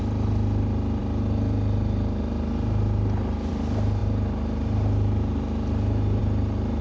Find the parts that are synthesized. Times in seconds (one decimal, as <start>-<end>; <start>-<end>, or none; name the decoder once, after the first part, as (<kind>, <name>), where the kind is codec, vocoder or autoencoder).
none